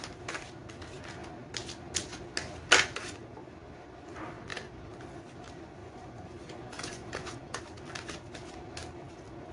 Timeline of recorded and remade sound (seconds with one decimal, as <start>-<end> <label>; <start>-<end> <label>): 0.0-5.8 recorded; 5.8-7.6 remade; 7.6-9.5 recorded